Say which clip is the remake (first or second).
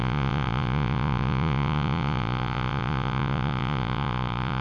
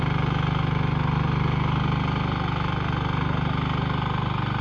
first